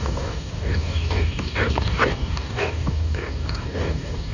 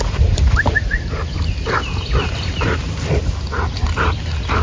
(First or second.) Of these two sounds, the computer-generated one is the first